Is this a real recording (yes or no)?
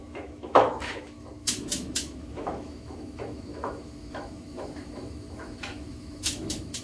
no